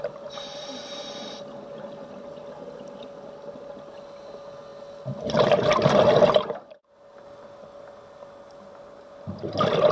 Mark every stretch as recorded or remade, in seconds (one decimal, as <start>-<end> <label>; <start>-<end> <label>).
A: 0.0-9.9 recorded